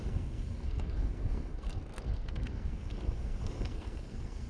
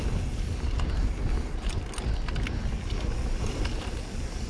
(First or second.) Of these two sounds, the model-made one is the first